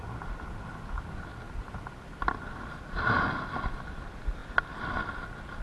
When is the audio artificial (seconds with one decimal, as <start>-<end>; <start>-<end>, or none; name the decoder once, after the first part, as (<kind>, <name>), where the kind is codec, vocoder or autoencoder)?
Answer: none